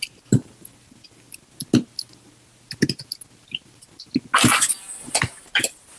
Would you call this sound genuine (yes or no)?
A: yes